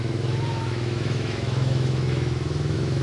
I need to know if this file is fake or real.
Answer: fake